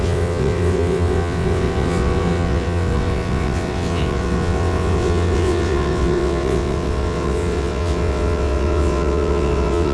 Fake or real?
fake